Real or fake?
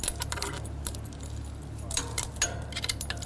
real